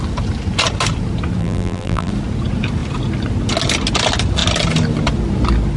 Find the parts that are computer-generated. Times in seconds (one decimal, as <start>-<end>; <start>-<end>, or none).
1.4-2.1